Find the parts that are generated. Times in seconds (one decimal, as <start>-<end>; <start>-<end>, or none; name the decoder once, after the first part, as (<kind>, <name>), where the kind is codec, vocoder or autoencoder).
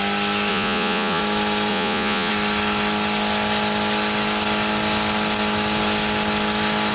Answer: 0.5-1.2 (vocoder, Vocos); 1.7-2.3